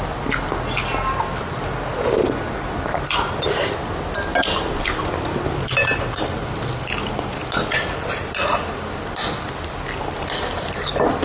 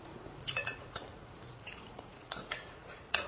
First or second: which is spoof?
second